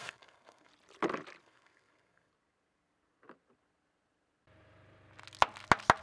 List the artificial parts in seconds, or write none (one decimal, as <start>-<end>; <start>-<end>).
0.0-0.7; 1.4-2.3